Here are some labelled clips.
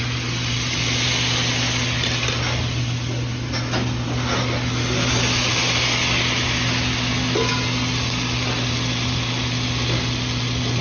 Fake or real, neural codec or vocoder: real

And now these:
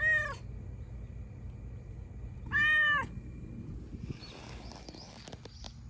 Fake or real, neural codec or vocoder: real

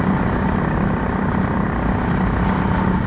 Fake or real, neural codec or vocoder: real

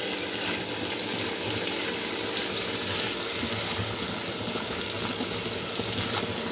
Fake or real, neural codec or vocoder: real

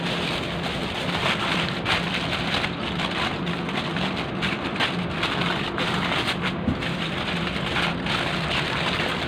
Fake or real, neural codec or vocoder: real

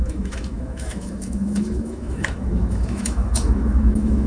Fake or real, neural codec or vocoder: fake, autoencoder, DAC-VAE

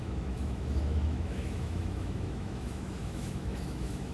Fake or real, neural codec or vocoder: fake, autoencoder, DAC-VAE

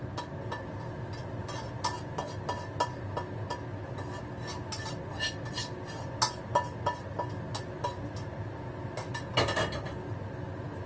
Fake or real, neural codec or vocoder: real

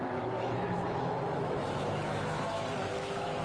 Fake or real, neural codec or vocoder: fake, autoencoder, DAC-VAE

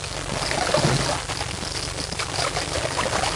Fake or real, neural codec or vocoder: real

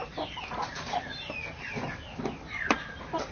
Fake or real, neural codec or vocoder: real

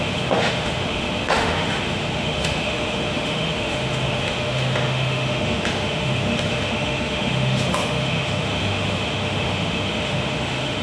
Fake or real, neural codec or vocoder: fake, autoencoder, DAC-VAE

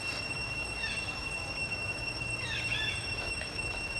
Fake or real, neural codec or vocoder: fake, autoencoder, DAC-VAE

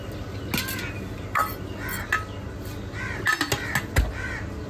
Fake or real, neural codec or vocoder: real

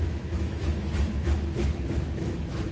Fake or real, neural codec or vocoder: fake, autoencoder, DAC-VAE